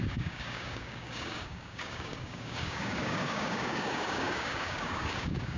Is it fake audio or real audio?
fake